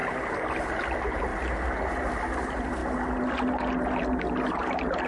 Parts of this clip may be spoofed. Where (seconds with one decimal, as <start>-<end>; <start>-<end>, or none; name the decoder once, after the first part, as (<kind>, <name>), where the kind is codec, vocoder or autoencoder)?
0.0-1.3 (vocoder, BigVGAN v2); 1.9-2.8